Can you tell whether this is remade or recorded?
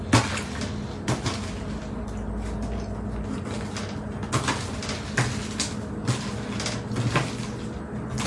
recorded